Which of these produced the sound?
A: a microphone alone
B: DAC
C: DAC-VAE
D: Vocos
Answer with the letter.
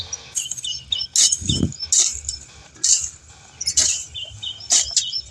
A